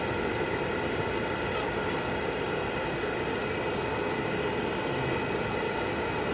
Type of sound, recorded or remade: recorded